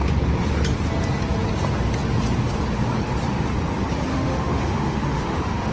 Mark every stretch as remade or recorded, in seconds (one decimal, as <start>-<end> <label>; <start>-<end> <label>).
0.0-4.1 recorded; 4.1-5.7 remade

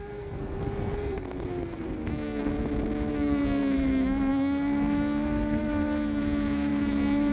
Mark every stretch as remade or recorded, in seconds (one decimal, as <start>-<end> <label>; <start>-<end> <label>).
0.0-2.5 remade; 2.5-3.1 recorded; 3.1-7.3 remade

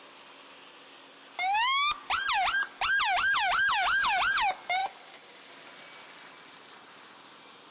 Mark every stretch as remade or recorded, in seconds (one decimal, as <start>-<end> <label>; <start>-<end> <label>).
0.0-4.8 recorded; 4.8-5.5 remade; 5.5-7.7 recorded

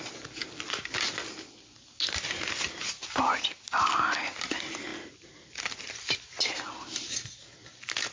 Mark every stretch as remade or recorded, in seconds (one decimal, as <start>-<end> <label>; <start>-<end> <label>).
0.0-8.1 recorded

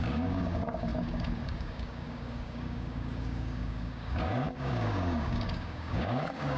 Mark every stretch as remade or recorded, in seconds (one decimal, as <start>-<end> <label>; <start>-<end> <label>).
0.0-6.6 remade

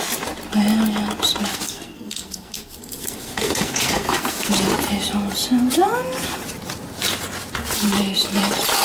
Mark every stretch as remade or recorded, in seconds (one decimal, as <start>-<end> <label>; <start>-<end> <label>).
0.0-1.5 recorded; 1.5-4.5 remade; 4.5-8.8 recorded

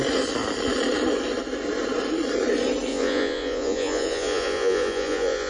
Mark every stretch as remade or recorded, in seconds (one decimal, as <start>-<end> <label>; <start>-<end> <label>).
0.0-2.9 recorded; 2.9-5.5 remade

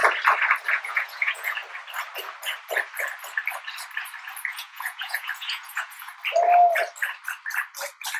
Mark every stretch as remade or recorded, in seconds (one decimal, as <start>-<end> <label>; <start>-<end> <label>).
0.0-0.7 recorded; 0.7-1.6 remade; 1.6-4.5 recorded; 4.5-6.1 remade; 6.1-8.2 recorded